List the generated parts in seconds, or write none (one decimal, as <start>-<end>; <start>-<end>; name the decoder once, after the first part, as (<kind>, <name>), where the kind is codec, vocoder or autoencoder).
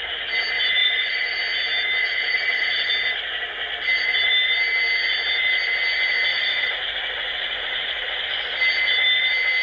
0.8-1.4 (vocoder, Vocos); 2.0-2.9; 6.3-8.2